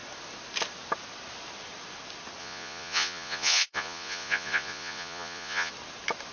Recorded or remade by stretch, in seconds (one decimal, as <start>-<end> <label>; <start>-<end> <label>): 0.0-2.4 recorded; 2.4-5.7 remade; 5.7-6.3 recorded